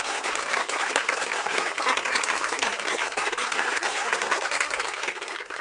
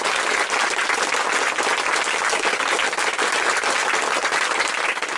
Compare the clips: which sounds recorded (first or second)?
second